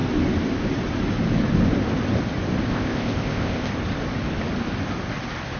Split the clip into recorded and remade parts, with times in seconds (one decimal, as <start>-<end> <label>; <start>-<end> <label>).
0.0-2.7 recorded; 2.7-3.7 remade; 3.7-5.6 recorded